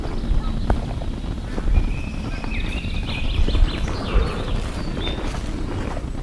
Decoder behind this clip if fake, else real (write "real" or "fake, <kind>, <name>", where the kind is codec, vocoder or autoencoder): real